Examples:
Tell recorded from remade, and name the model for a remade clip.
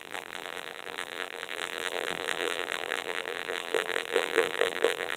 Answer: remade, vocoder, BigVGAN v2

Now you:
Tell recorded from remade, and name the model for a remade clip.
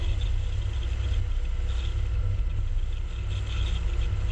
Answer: recorded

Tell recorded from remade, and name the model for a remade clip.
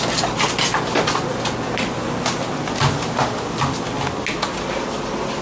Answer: recorded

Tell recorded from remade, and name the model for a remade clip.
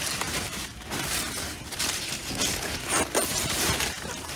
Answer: remade, vocoder, BigVGAN v2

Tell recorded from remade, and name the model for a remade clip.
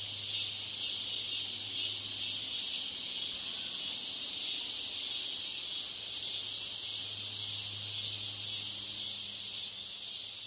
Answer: recorded